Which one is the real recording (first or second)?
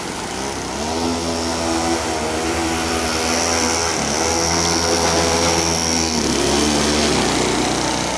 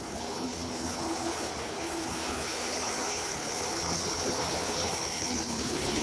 first